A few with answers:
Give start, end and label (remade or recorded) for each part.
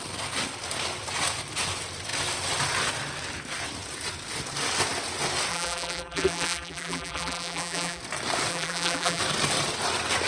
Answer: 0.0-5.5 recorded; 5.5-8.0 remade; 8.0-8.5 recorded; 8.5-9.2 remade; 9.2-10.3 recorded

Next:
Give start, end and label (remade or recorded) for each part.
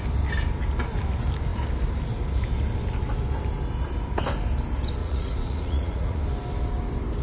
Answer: 0.0-5.0 recorded; 5.0-6.2 remade; 6.2-7.2 recorded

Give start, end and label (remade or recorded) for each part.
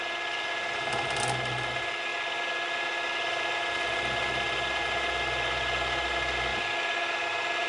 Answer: 0.0-7.7 recorded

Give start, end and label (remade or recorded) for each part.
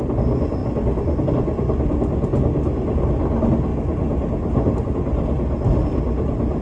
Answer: 0.0-6.6 recorded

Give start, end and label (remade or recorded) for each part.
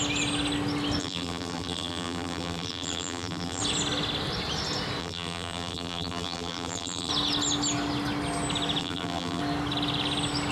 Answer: 0.0-1.0 recorded; 1.0-3.6 remade; 3.6-5.0 recorded; 5.0-7.1 remade; 7.1-8.8 recorded; 8.8-9.4 remade; 9.4-10.5 recorded